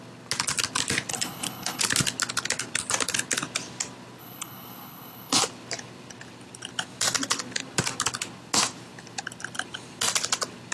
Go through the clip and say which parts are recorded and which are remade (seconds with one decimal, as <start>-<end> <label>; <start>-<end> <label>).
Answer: 0.0-1.1 recorded; 1.1-1.8 remade; 1.8-4.2 recorded; 4.2-5.4 remade; 5.4-10.7 recorded